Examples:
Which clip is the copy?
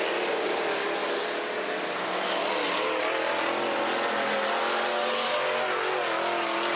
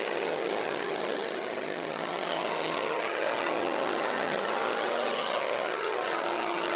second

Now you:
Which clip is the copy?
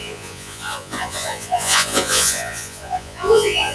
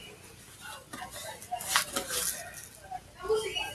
first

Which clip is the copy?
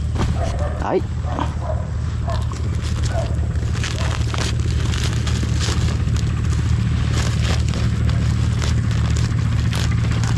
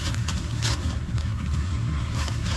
second